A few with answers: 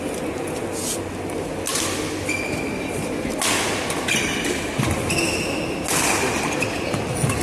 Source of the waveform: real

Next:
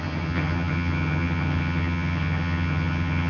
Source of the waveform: fake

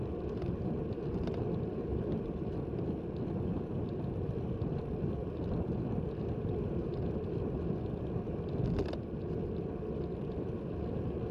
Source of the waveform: fake